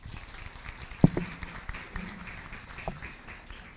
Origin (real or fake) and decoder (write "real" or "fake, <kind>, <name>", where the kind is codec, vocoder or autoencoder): real